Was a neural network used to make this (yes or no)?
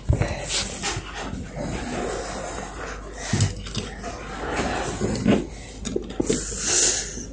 no